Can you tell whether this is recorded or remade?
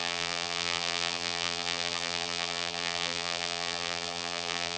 remade